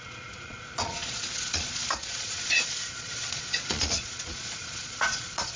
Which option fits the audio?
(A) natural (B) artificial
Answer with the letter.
B